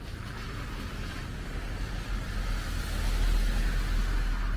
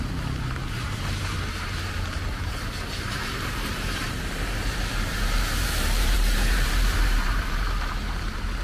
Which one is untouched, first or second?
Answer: first